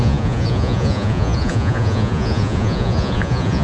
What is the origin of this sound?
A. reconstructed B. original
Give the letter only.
A